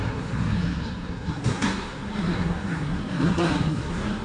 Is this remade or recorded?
remade